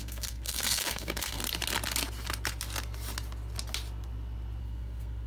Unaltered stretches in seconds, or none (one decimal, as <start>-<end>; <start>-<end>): 1.4-4.6